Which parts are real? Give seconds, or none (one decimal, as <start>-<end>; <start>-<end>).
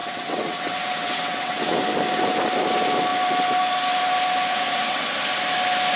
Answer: 1.8-4.5; 5.1-6.0